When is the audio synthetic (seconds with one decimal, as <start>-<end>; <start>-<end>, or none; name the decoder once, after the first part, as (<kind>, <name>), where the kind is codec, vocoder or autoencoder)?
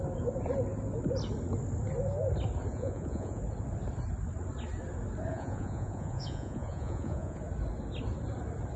2.7-3.4 (vocoder, Vocos); 5.3-7.4